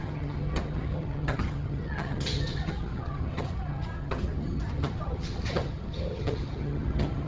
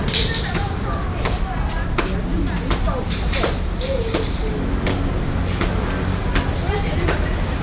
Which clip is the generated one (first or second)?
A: first